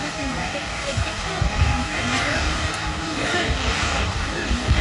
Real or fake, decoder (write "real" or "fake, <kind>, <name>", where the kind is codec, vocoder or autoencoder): fake, codec, DAC